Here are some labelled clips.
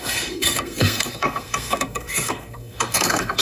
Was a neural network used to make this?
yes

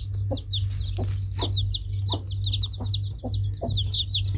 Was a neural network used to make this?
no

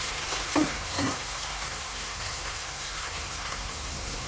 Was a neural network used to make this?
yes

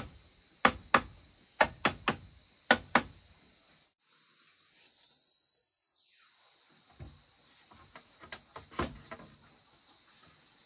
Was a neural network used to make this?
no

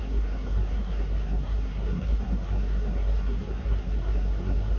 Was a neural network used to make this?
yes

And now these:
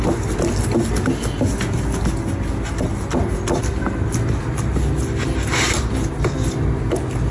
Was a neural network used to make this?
no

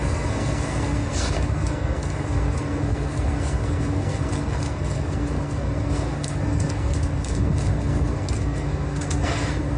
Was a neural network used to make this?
yes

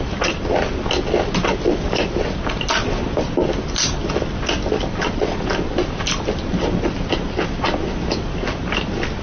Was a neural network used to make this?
no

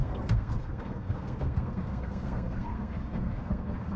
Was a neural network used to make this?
yes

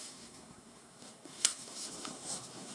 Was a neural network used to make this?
yes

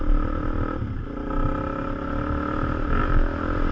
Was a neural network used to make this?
no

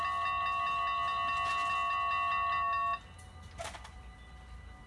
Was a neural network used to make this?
no